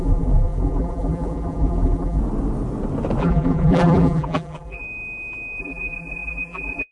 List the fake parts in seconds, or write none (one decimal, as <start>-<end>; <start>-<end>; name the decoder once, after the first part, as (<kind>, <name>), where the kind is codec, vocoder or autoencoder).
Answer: 0.0-2.2 (vocoder, BigVGAN v2); 3.2-4.8; 5.6-6.9